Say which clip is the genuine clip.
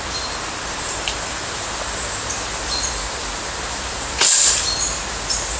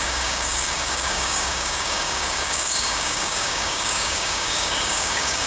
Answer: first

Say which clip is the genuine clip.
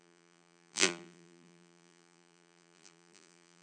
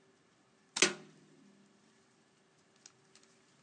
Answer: second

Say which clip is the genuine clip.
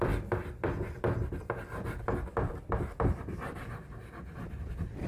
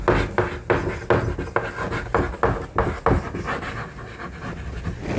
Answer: second